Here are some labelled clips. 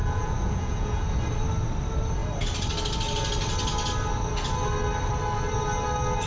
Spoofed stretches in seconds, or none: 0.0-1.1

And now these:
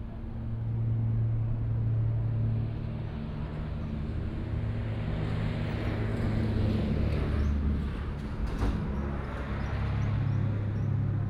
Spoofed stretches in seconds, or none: none

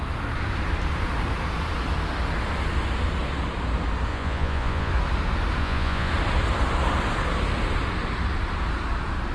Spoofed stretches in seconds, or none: 4.1-4.9; 5.6-6.1

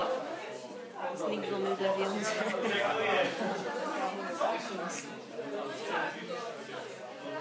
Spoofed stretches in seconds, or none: none

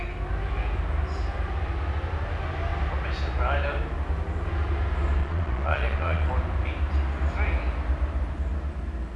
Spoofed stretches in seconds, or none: 5.2-6.3

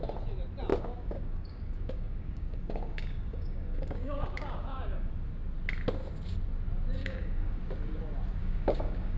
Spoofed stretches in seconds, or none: 0.7-5.1; 7.0-7.6; 8.4-9.2

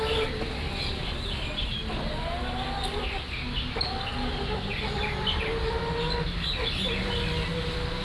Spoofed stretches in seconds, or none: none